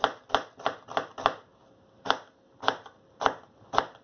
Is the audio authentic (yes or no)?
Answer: yes